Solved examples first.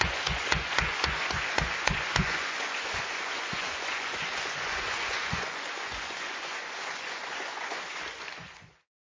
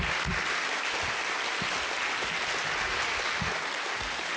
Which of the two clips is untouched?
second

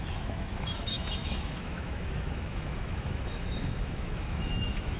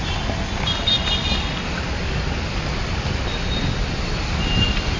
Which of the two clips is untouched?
second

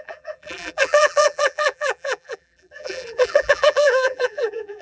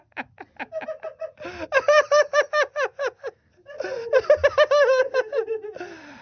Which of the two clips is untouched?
second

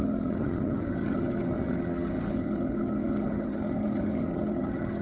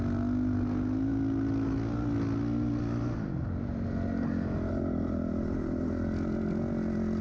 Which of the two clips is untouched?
second